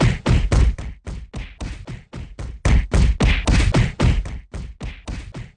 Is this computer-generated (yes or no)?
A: no